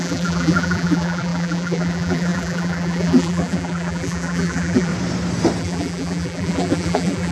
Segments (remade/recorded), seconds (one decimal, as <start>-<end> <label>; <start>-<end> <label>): 0.0-4.9 remade; 4.9-5.6 recorded; 5.6-7.3 remade